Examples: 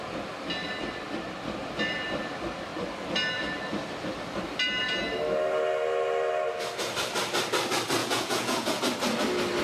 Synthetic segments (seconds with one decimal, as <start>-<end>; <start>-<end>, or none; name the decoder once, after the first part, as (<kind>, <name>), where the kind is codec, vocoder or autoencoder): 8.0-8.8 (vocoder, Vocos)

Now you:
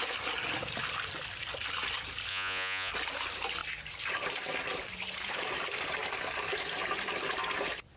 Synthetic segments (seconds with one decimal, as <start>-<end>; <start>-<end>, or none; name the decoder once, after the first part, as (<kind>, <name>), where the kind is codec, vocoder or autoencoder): 2.3-2.9 (vocoder, Vocos)

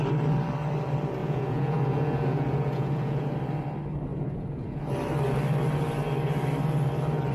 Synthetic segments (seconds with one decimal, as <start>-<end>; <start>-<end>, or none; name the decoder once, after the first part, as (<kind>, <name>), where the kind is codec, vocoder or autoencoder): 1.2-3.3 (vocoder, Vocos); 4.1-4.9

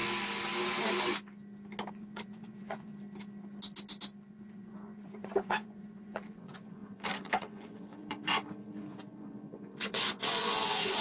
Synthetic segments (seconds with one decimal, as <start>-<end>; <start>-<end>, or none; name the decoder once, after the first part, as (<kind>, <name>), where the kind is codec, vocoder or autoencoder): 1.9-2.9 (vocoder, Vocos); 4.3-11.0

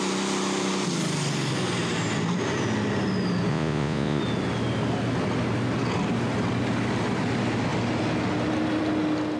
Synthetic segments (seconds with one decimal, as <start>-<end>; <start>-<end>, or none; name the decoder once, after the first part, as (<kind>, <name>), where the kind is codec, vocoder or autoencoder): 3.5-4.2 (vocoder, Vocos)